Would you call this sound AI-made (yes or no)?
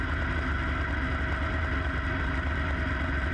no